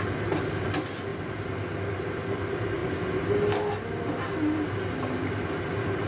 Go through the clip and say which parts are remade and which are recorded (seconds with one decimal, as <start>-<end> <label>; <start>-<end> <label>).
0.0-6.1 recorded